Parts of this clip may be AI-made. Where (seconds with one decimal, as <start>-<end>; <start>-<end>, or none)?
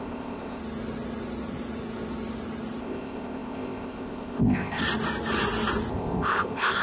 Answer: 0.0-0.6; 2.8-4.8; 5.9-6.8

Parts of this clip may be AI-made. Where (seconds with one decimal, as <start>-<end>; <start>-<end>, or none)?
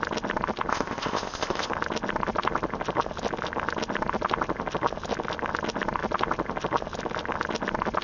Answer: 0.7-1.7